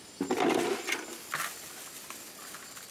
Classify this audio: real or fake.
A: real